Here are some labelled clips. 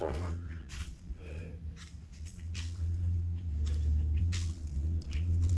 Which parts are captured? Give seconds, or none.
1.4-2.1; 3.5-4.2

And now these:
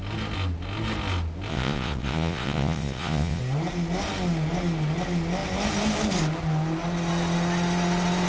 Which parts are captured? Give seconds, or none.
0.0-1.5; 3.4-8.3

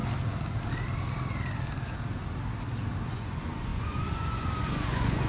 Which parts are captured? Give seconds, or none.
0.0-3.1

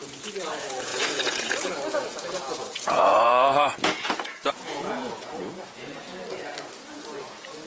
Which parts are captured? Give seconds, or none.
6.2-6.9

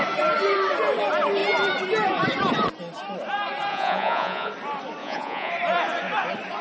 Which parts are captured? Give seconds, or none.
0.0-3.7; 4.5-5.0; 5.5-6.6